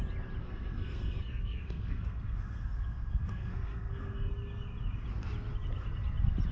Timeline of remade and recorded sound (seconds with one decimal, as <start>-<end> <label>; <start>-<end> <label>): 0.0-0.4 recorded; 0.4-4.3 remade; 4.3-6.5 recorded